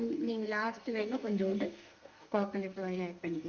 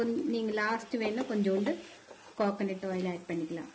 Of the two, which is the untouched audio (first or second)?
second